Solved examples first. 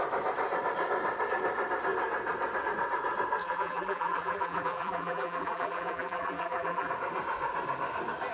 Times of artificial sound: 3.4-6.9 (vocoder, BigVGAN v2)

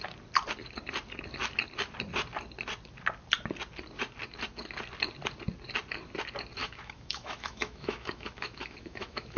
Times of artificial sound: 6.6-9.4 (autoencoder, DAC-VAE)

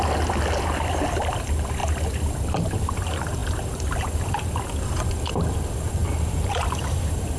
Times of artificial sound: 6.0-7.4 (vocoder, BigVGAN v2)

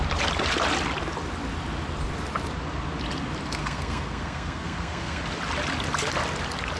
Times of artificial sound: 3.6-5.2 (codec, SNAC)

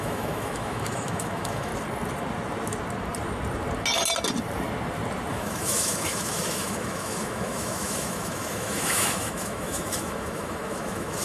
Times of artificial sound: 0.0-1.7 (autoencoder, DAC-VAE); 5.3-11.2

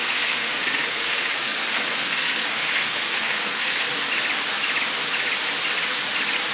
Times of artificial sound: 0.0-3.9 (codec, SNAC)

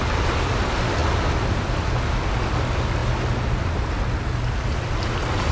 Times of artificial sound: none

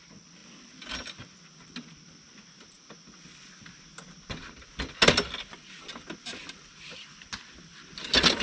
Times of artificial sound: none